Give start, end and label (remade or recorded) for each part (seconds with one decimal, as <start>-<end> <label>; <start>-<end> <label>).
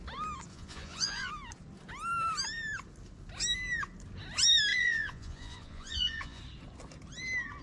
0.0-0.5 recorded; 0.5-1.3 remade; 1.3-4.7 recorded; 4.7-6.4 remade; 6.4-7.6 recorded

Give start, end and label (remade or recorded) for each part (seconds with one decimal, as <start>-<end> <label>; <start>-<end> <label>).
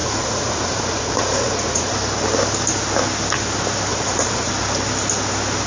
0.0-1.9 remade; 1.9-3.9 recorded; 3.9-4.5 remade; 4.5-5.7 recorded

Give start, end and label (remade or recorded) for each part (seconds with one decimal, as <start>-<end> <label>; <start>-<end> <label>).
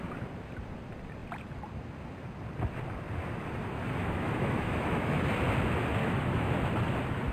0.0-4.0 recorded; 4.0-5.2 remade; 5.2-6.0 recorded; 6.0-6.5 remade; 6.5-7.3 recorded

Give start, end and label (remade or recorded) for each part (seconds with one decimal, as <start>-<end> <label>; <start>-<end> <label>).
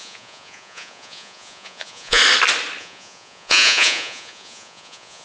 0.0-2.2 remade; 2.2-2.8 recorded; 2.8-5.2 remade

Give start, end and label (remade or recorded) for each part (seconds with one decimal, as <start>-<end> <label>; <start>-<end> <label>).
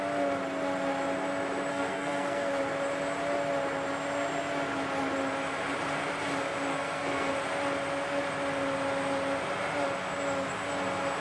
0.0-1.7 recorded; 1.7-2.5 remade; 2.5-6.7 recorded; 6.7-7.3 remade; 7.3-11.2 recorded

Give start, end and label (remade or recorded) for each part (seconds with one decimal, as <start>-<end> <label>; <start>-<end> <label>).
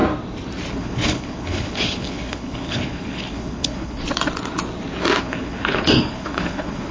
0.0-0.7 recorded; 0.7-4.0 remade; 4.0-5.2 recorded; 5.2-6.9 remade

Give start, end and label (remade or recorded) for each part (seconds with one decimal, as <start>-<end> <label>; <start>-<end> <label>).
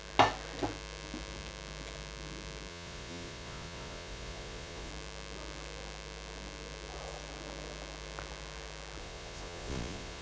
0.0-2.7 recorded; 2.7-4.9 remade; 4.9-9.0 recorded; 9.0-10.2 remade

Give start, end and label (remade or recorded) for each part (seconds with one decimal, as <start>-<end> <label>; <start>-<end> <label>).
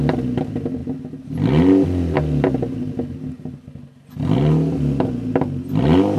0.0-6.2 recorded